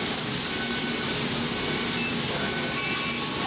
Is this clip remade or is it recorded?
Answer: recorded